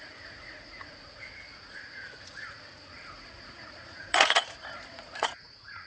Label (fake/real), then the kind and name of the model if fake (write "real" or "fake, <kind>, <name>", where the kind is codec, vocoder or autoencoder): fake, vocoder, Vocos